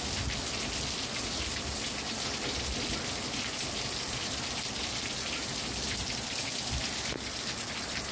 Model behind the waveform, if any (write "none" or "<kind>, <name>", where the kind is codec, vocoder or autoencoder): none